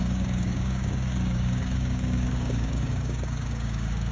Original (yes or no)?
no